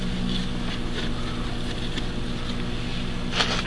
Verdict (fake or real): real